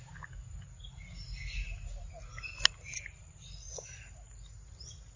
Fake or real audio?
real